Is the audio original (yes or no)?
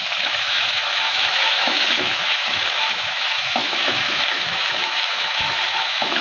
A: no